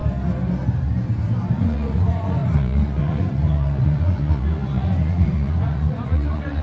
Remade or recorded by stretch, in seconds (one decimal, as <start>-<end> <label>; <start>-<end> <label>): 0.0-1.5 recorded; 1.5-6.6 remade